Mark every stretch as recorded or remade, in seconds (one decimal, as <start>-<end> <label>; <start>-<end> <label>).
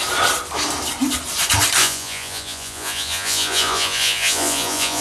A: 0.0-1.8 recorded; 1.8-5.0 remade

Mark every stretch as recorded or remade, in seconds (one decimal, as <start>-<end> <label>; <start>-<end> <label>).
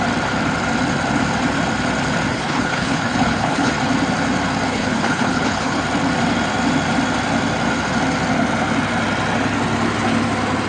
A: 0.0-2.3 recorded; 2.3-3.7 remade; 3.7-4.7 recorded; 4.7-5.8 remade; 5.8-10.7 recorded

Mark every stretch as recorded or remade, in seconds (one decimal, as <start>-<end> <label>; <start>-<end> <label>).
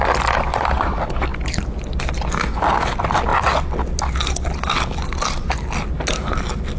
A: 0.0-6.8 recorded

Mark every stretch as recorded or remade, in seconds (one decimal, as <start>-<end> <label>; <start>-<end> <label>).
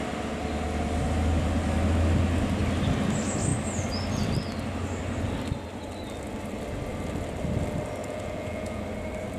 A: 0.0-8.0 recorded; 8.0-8.8 remade; 8.8-9.4 recorded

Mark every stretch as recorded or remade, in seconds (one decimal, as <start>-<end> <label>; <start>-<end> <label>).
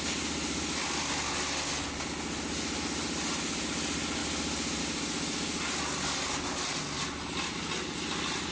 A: 0.0-8.5 recorded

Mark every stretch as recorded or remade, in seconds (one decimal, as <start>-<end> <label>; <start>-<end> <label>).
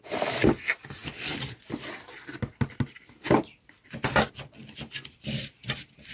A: 0.0-6.1 recorded